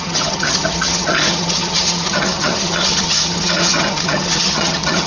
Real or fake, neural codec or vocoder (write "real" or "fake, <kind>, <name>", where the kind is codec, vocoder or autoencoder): fake, vocoder, HiFi-GAN